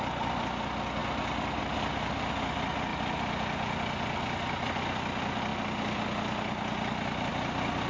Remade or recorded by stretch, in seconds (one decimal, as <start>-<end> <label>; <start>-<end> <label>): 0.0-7.9 recorded